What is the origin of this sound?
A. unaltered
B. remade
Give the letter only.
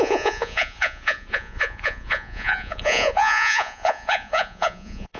B